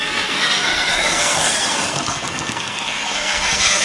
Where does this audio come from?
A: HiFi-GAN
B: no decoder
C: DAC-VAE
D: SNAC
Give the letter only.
D